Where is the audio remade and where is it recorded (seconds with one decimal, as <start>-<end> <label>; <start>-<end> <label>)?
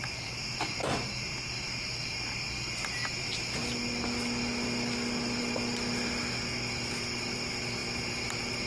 0.0-8.7 recorded